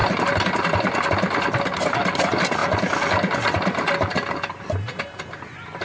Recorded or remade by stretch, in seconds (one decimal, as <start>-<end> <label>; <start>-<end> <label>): 0.0-5.8 recorded